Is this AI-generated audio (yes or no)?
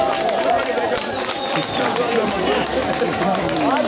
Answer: yes